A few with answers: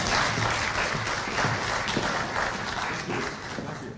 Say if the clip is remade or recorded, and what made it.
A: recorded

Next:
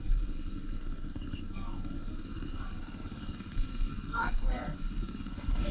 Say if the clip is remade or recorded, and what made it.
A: remade, codec, SNAC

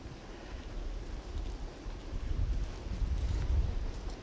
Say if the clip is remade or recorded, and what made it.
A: recorded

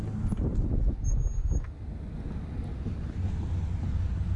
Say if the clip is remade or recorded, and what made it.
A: recorded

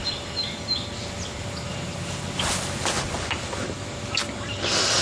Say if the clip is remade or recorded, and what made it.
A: recorded